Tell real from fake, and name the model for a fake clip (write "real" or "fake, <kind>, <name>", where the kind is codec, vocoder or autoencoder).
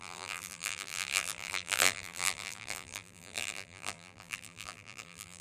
fake, vocoder, BigVGAN v2